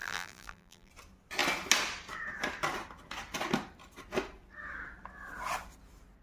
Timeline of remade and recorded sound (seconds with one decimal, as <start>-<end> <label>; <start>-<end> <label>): 0.0-0.9 remade; 0.9-6.2 recorded